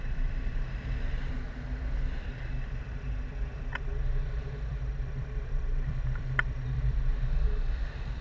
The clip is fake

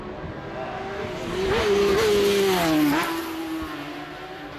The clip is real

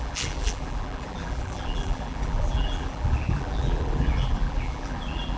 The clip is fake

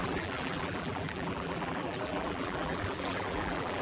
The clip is fake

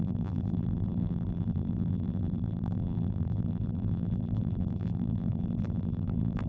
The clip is fake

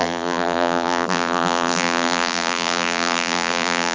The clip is fake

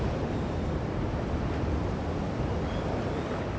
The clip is fake